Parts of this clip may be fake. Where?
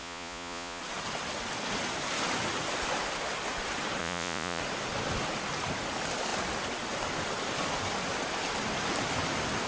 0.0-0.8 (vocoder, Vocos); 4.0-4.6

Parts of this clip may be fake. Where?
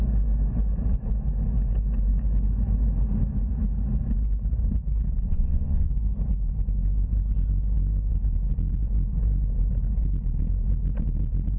5.3-5.9 (vocoder, Vocos)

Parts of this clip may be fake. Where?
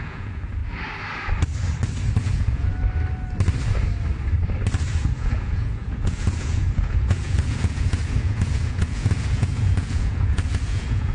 0.0-0.6 (vocoder, Vocos); 2.2-2.7; 5.0-11.1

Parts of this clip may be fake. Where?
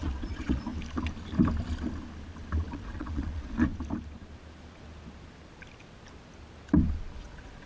0.0-0.7 (vocoder, Vocos); 2.7-3.7; 7.1-7.7